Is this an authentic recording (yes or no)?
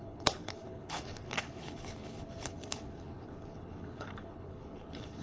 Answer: no